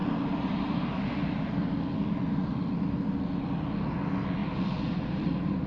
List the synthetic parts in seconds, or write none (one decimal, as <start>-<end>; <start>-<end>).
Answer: none